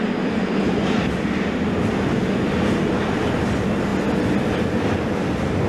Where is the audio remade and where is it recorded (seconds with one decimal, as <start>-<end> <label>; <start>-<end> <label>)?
0.0-5.7 recorded